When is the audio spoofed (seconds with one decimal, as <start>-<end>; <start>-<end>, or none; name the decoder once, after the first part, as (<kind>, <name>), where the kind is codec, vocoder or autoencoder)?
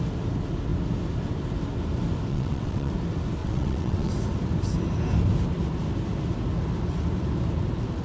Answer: 2.3-2.9 (vocoder, WaveNeXt); 3.4-4.1